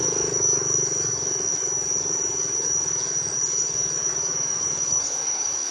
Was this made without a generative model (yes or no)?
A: no